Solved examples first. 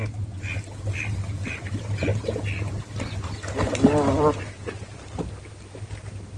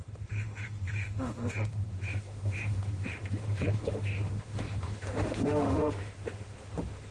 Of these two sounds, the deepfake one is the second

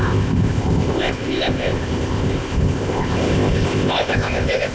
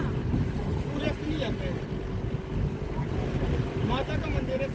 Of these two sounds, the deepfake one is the first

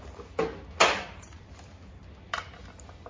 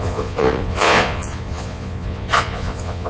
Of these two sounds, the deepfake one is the second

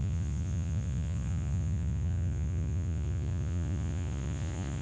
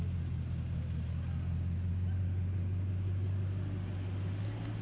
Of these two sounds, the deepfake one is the first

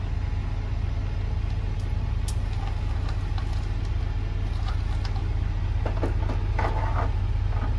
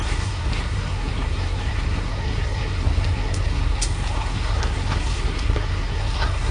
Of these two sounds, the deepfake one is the second